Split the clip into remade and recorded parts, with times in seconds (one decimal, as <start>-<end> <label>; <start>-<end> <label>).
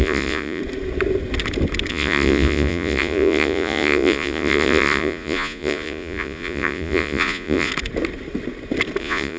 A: 0.0-0.6 remade; 0.6-1.9 recorded; 1.9-7.7 remade; 7.7-9.0 recorded; 9.0-9.4 remade